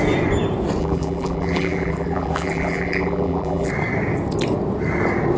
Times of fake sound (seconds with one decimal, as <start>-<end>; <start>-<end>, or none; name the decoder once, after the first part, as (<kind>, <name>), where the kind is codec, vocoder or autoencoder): 0.8-3.7 (vocoder, BigVGAN v2)